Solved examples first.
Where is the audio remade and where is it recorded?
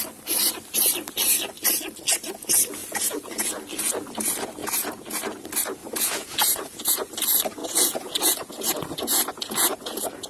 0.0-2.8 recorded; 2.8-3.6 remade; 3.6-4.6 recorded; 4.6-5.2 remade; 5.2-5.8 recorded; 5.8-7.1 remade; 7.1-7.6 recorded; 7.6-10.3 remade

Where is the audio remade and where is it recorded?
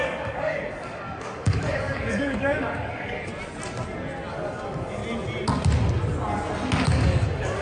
0.0-3.3 remade; 3.3-4.3 recorded; 4.3-5.0 remade; 5.0-6.9 recorded; 6.9-7.6 remade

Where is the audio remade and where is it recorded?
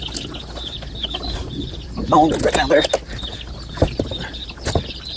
0.0-1.4 recorded; 1.4-2.9 remade; 2.9-5.2 recorded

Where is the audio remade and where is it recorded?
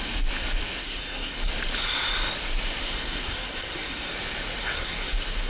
0.0-0.8 recorded; 0.8-1.5 remade; 1.5-2.8 recorded; 2.8-4.1 remade; 4.1-4.6 recorded; 4.6-5.1 remade; 5.1-5.5 recorded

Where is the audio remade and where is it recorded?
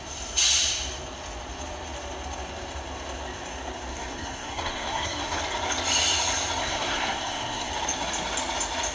0.0-3.9 recorded; 3.9-5.4 remade; 5.4-6.6 recorded; 6.6-7.7 remade; 7.7-8.9 recorded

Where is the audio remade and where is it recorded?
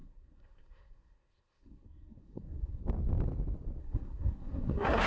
0.0-2.8 remade; 2.8-3.8 recorded; 3.8-5.1 remade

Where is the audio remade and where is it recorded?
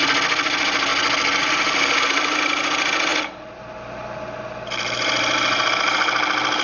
0.0-6.6 recorded